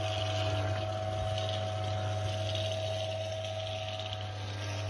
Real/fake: real